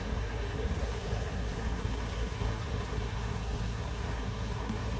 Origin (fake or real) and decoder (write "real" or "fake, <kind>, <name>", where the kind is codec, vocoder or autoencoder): fake, codec, SNAC